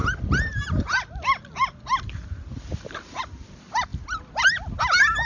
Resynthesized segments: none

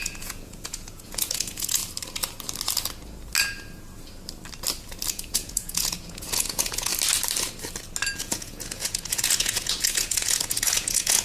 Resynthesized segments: 0.0-1.8; 5.1-6.9; 8.2-11.2

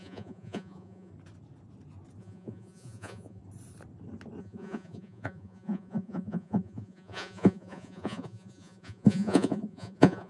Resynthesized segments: 0.0-1.1; 2.2-3.4; 4.4-10.3

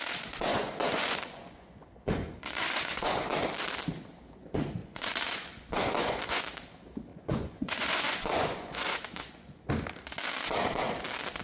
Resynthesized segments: 0.5-3.3; 4.8-6.4; 7.1-9.7

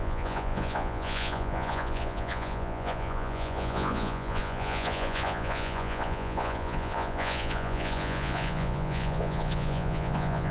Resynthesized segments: 0.0-10.5